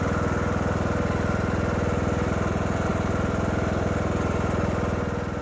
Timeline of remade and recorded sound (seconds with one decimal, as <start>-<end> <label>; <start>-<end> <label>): 0.0-5.4 recorded